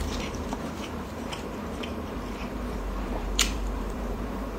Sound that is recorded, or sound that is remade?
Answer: remade